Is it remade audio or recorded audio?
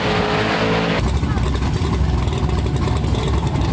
recorded